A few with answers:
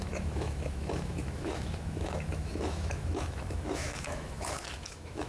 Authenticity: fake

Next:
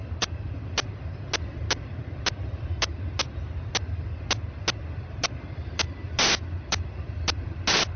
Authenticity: real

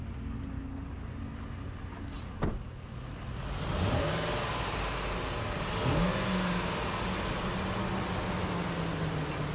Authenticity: real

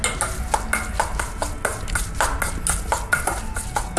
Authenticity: real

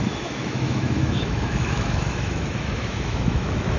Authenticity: fake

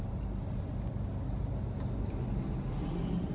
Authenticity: real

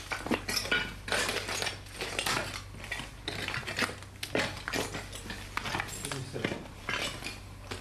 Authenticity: real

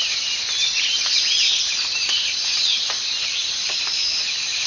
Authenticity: real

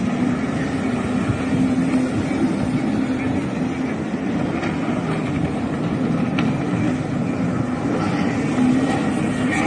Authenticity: real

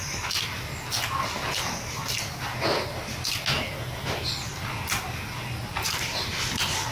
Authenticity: real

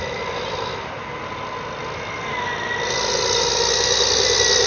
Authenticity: real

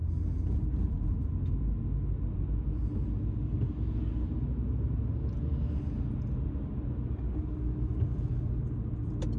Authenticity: real